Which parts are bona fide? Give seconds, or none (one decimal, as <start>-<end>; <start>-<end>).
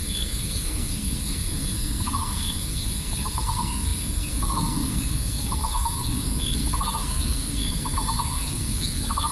none